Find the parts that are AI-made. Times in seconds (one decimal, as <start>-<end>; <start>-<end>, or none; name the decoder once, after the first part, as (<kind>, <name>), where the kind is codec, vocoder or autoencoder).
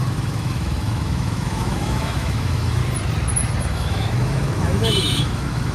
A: 0.0-2.8 (autoencoder, DAC-VAE); 3.6-5.7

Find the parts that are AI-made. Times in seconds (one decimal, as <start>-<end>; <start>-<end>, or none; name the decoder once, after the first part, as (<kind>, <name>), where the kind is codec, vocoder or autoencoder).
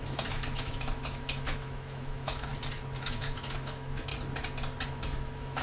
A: 0.0-2.5 (autoencoder, DAC-VAE); 3.0-4.1; 4.9-5.6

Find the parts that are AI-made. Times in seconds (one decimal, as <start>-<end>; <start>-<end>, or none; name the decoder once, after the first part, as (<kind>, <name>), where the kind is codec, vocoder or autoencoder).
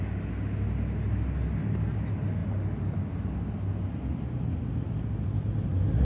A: none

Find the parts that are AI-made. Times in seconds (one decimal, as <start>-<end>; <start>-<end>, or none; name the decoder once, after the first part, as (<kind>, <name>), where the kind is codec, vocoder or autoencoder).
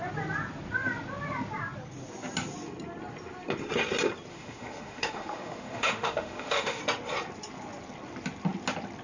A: 4.3-6.8 (autoencoder, DAC-VAE)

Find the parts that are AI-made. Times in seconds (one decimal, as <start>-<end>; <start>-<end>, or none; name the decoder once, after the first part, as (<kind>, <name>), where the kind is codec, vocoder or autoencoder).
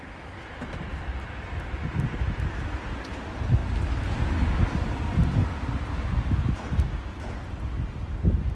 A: none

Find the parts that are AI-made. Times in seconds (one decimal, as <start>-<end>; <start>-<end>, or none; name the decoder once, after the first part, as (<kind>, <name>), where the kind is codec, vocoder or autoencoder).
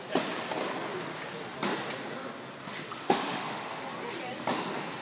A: 2.6-3.8 (autoencoder, DAC-VAE)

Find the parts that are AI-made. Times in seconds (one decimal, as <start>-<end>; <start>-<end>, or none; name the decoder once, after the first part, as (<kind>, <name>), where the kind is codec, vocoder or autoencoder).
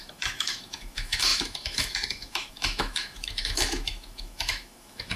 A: 0.0-5.2 (autoencoder, DAC-VAE)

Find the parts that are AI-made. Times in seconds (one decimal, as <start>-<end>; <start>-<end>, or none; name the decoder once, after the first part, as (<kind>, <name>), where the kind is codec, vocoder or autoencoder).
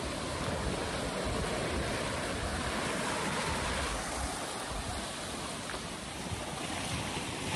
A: none